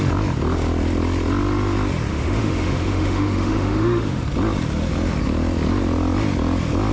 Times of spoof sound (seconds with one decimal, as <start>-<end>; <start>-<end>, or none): 2.1-4.2